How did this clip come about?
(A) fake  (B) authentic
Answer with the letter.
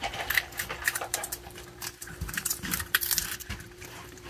A